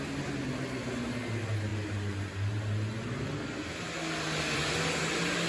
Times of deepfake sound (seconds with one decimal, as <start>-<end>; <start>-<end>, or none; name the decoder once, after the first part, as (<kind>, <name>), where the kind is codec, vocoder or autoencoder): none